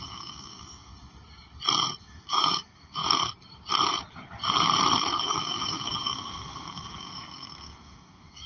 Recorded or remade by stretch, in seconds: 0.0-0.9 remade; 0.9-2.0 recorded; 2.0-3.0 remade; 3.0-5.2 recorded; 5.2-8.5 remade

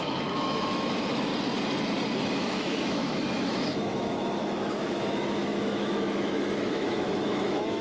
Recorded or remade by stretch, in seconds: 0.0-1.3 remade; 1.3-2.3 recorded; 2.3-7.8 remade

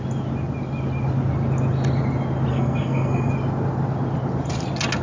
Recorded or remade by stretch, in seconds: 0.0-2.5 recorded; 2.5-3.3 remade; 3.3-5.0 recorded